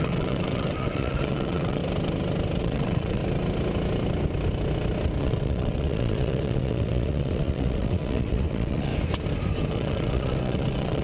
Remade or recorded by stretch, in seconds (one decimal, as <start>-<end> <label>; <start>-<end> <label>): 0.0-1.8 remade; 1.8-2.6 recorded; 2.6-3.2 remade; 3.2-5.2 recorded; 5.2-8.9 remade; 8.9-9.7 recorded; 9.7-11.0 remade